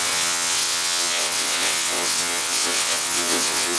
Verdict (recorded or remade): remade